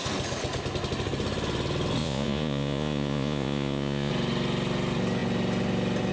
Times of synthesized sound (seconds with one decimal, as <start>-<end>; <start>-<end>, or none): 2.0-4.1